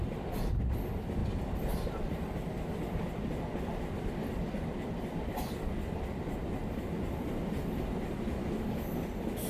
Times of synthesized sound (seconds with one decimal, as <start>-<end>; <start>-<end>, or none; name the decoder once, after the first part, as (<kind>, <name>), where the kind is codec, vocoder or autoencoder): none